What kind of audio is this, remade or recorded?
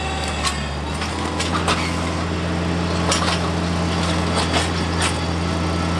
recorded